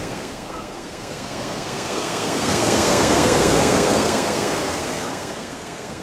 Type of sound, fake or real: fake